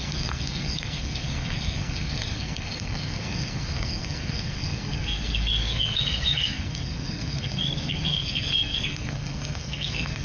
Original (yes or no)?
no